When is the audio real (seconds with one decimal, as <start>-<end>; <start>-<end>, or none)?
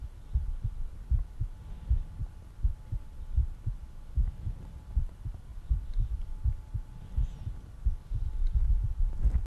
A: 0.0-9.5